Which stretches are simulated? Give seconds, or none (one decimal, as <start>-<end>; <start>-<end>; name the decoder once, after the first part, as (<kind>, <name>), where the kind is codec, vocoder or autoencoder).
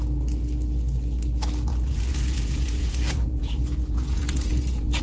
1.7-5.0 (vocoder, Vocos)